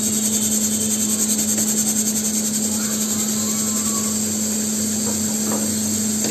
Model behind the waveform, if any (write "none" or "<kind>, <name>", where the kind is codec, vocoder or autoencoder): none